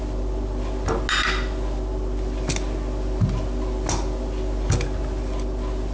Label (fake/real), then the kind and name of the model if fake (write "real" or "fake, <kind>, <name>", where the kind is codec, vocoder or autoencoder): real